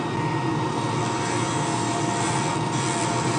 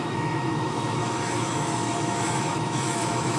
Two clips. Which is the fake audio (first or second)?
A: second